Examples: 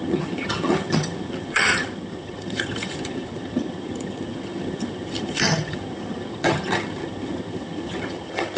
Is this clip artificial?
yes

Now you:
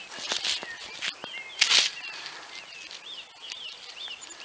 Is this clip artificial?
no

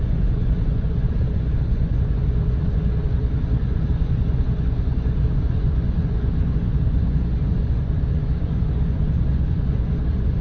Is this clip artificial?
yes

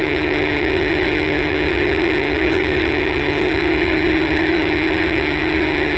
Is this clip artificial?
yes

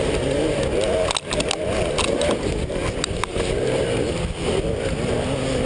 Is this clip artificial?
no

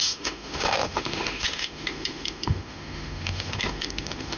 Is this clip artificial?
yes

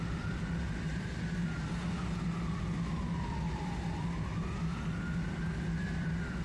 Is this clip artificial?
no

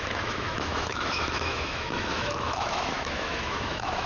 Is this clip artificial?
yes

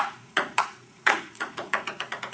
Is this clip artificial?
yes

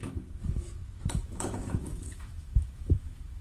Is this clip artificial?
yes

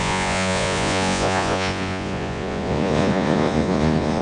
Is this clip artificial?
yes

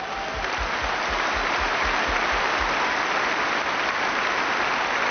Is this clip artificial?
no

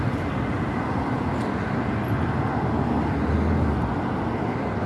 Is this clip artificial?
no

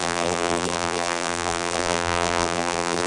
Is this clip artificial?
yes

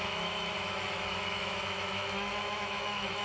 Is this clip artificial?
yes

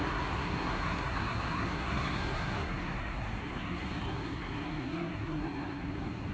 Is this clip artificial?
yes